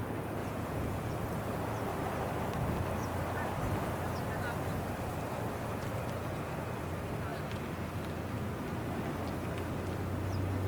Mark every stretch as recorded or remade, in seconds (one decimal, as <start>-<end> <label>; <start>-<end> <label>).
0.0-0.4 recorded; 0.4-1.1 remade; 1.1-6.2 recorded; 6.2-6.8 remade; 6.8-10.7 recorded